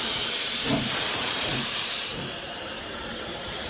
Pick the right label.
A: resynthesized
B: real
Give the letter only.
A